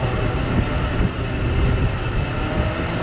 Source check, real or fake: real